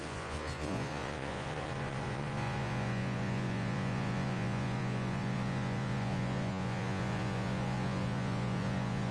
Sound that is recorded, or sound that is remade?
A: remade